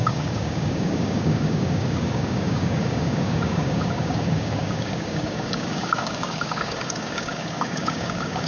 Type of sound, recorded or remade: remade